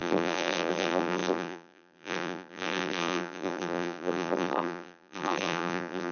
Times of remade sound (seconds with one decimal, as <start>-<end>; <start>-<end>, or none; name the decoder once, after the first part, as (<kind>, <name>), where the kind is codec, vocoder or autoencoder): 0.0-6.1 (vocoder, BigVGAN v2)